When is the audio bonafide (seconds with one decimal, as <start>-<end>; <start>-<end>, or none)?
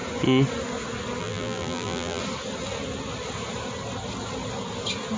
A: 0.0-1.2; 2.2-5.2